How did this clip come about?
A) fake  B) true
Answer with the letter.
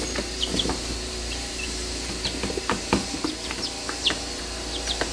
A